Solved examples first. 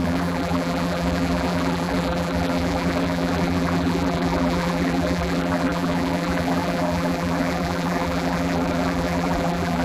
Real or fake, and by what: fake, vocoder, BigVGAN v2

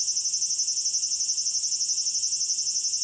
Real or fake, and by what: fake, vocoder, BigVGAN v2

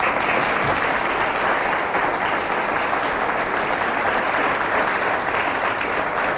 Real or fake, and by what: real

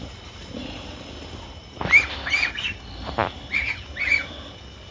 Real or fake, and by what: fake, vocoder, BigVGAN v2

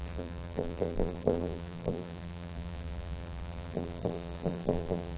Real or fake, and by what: fake, vocoder, BigVGAN v2